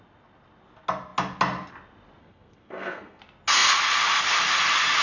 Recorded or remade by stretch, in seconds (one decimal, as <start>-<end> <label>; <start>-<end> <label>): 0.0-2.2 recorded; 2.2-3.2 remade; 3.2-5.0 recorded